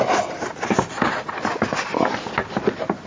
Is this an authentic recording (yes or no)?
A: yes